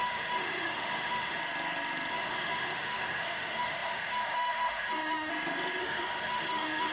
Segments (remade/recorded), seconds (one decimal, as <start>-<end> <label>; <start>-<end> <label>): 0.0-1.4 remade; 1.4-2.1 recorded; 2.1-5.3 remade; 5.3-5.8 recorded; 5.8-6.9 remade